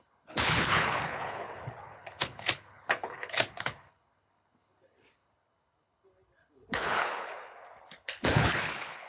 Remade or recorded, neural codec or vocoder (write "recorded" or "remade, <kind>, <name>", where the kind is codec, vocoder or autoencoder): remade, codec, HILCodec